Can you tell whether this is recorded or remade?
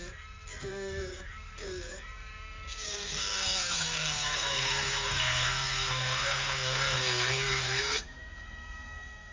remade